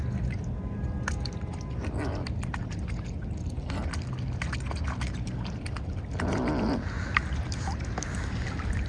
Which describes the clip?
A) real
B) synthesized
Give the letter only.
A